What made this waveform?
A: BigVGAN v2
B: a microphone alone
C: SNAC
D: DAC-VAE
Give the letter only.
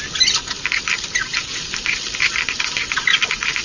B